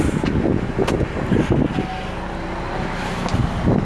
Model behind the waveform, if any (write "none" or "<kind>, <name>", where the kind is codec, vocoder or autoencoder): none